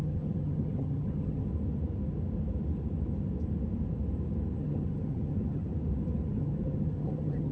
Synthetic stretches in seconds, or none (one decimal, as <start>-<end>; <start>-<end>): 0.0-1.5; 4.6-5.7; 6.3-7.5